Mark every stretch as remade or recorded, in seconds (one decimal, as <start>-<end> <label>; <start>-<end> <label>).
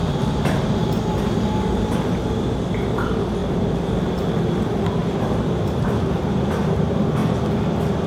0.0-1.9 remade; 1.9-3.4 recorded; 3.4-4.1 remade; 4.1-5.0 recorded; 5.0-6.8 remade; 6.8-8.1 recorded